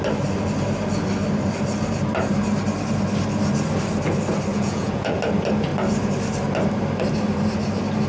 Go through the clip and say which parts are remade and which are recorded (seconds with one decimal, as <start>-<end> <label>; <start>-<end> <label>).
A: 0.0-4.5 recorded; 4.5-5.2 remade; 5.2-8.1 recorded